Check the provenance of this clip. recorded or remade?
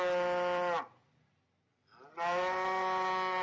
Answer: recorded